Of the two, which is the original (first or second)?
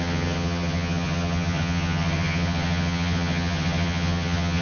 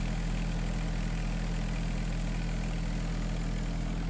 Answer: second